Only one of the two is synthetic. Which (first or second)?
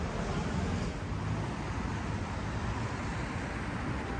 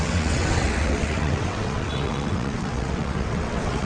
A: second